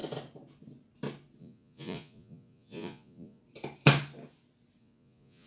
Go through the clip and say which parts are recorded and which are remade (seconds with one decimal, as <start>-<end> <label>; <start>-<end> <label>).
0.0-1.4 recorded; 1.4-3.4 remade; 3.4-4.8 recorded; 4.8-5.5 remade